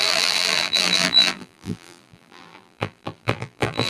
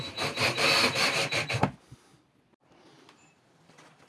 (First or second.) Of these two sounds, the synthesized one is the first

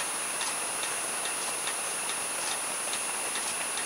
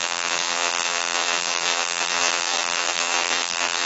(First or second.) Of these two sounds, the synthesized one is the second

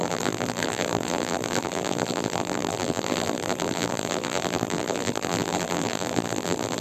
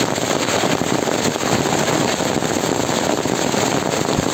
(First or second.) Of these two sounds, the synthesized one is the first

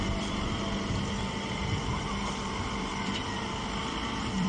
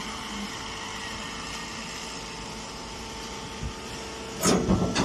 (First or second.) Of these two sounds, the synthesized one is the first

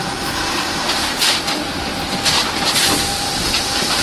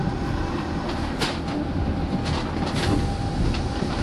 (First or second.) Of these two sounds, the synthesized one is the first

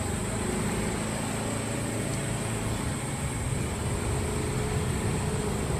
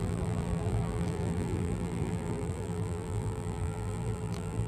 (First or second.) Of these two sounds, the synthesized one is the second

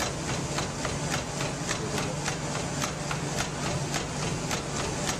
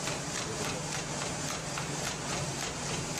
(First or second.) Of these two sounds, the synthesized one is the second